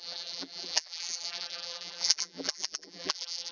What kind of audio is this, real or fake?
fake